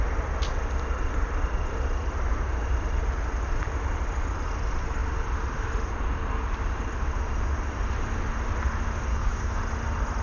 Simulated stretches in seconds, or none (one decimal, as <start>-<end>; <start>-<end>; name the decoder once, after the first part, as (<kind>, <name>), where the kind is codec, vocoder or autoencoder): 9.1-9.6 (codec, DAC)